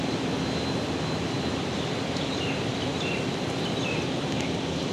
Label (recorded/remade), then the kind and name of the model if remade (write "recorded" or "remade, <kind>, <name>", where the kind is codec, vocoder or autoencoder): recorded